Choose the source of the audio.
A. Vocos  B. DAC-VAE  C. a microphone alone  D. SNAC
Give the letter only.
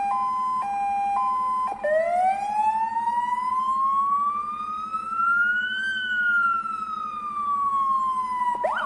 C